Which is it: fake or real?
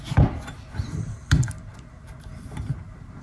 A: real